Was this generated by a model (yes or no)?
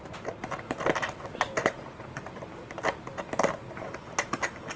no